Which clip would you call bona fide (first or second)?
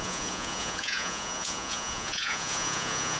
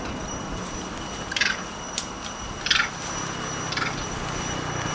second